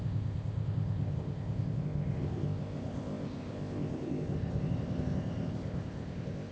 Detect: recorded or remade remade